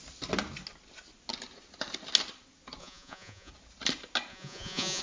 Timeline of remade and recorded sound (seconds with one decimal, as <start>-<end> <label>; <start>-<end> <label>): 0.0-2.8 recorded; 2.8-3.5 remade; 3.5-4.3 recorded; 4.3-5.0 remade

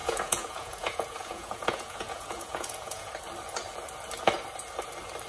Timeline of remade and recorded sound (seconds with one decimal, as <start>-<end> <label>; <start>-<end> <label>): 0.0-3.1 remade; 3.1-5.3 recorded

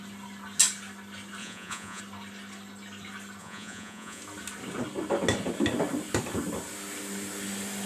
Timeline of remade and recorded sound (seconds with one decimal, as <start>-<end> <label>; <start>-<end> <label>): 0.0-1.4 recorded; 1.4-2.0 remade; 2.0-3.4 recorded; 3.4-4.2 remade; 4.2-7.9 recorded

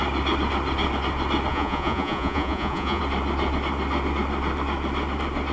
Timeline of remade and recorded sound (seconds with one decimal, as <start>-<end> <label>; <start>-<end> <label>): 0.0-1.5 recorded; 1.5-3.0 remade; 3.0-5.5 recorded

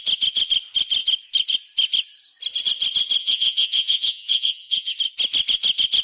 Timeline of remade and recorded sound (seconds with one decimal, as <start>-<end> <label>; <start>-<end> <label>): 0.0-3.2 recorded; 3.2-4.9 remade; 4.9-6.0 recorded

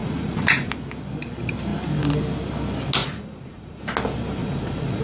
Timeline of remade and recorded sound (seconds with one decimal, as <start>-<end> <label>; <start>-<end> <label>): 0.0-0.7 remade; 0.7-3.0 recorded; 3.0-3.8 remade; 3.8-4.4 recorded; 4.4-5.0 remade